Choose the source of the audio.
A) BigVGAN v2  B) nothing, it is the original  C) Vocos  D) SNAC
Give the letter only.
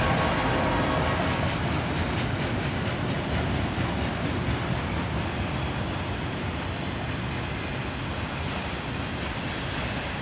B